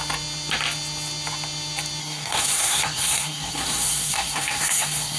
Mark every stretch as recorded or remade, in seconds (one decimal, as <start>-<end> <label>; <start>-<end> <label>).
0.0-2.0 recorded; 2.0-5.2 remade